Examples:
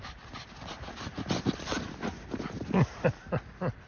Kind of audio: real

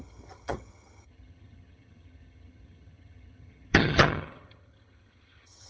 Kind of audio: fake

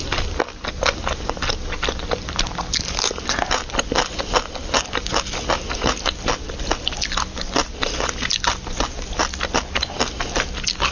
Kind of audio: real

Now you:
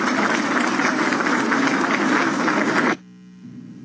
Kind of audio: real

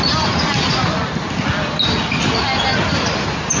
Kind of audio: real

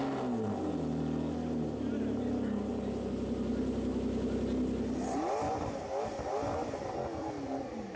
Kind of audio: real